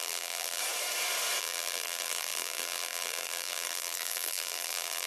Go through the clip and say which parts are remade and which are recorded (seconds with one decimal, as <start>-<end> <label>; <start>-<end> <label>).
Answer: 0.0-0.6 remade; 0.6-1.4 recorded; 1.4-5.1 remade